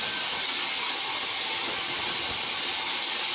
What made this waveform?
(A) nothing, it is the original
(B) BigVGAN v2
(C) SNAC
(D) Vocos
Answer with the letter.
A